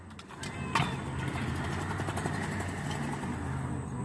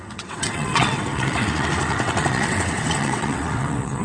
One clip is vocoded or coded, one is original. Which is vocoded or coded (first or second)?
second